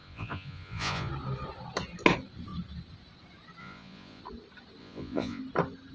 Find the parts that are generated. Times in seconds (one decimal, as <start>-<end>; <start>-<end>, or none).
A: 0.0-1.1; 3.6-4.2; 4.8-5.4